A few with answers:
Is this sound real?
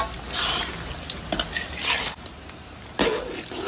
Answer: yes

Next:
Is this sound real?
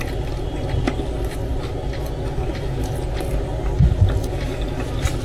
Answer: yes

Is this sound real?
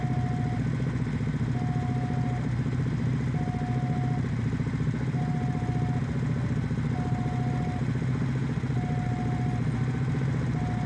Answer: yes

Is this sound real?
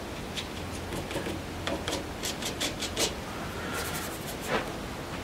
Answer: yes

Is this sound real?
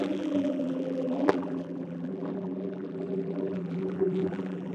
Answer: no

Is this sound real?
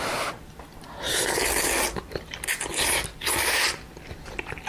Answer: no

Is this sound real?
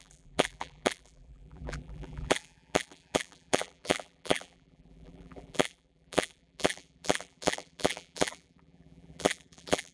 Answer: no